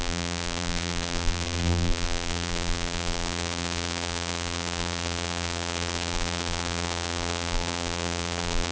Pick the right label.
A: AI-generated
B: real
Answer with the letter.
A